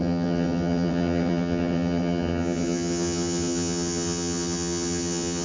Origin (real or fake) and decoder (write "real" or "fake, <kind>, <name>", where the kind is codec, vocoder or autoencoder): fake, vocoder, HiFi-GAN